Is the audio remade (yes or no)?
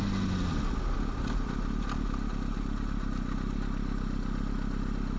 no